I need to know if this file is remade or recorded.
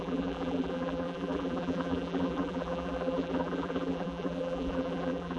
remade